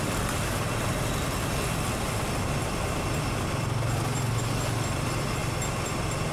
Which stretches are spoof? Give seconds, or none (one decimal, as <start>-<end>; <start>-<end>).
none

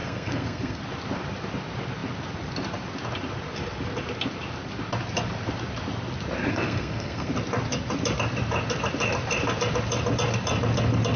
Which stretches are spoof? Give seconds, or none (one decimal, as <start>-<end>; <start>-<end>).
0.0-0.8; 6.5-7.3